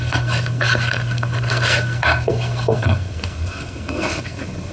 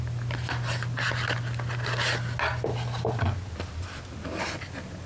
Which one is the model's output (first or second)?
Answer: first